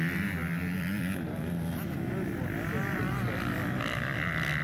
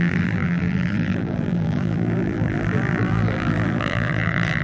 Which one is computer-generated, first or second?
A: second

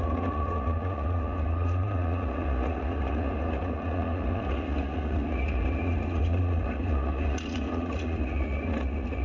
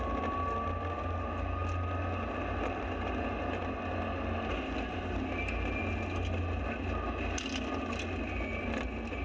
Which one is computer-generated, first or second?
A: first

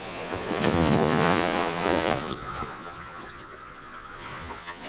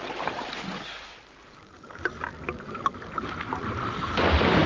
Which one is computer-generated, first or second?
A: first